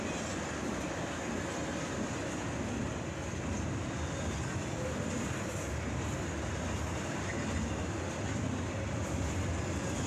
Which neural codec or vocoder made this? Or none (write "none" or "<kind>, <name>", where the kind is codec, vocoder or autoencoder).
none